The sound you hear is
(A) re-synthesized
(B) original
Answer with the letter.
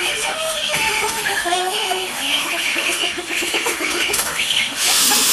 A